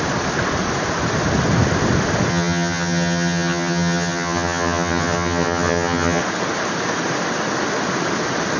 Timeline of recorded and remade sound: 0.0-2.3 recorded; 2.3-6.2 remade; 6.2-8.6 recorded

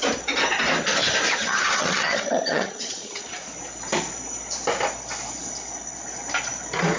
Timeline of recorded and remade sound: 0.0-1.4 recorded; 1.4-3.2 remade; 3.2-7.0 recorded

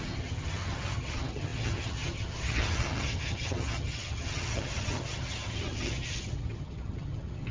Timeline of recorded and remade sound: 0.0-7.5 remade

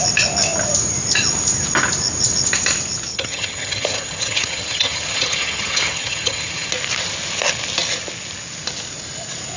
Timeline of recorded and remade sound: 0.0-3.1 recorded; 3.1-6.7 remade; 6.7-9.6 recorded

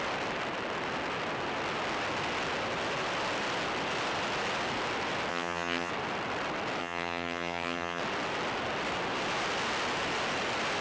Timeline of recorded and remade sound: 0.0-5.3 recorded; 5.3-5.9 remade; 5.9-6.8 recorded; 6.8-8.0 remade; 8.0-10.8 recorded

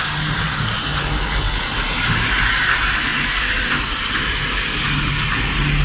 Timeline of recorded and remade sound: 0.0-5.8 recorded

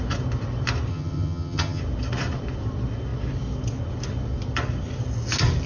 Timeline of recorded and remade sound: 0.0-0.9 recorded; 0.9-1.8 remade; 1.8-5.7 recorded